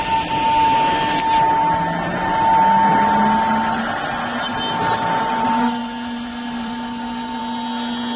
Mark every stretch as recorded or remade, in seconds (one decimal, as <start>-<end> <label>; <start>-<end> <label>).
0.0-5.8 recorded; 5.8-7.4 remade; 7.4-8.2 recorded